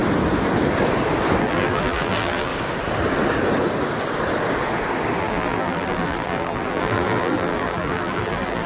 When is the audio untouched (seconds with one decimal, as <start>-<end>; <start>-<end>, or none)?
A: 0.0-1.4; 2.5-5.2